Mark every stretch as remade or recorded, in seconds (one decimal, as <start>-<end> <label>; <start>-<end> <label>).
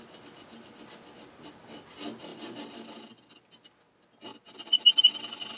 0.0-5.6 recorded